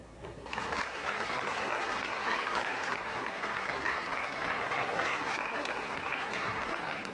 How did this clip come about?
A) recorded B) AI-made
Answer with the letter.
B